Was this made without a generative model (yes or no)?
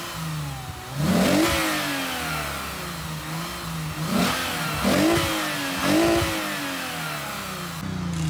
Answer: yes